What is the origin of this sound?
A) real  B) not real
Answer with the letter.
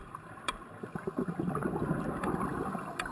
B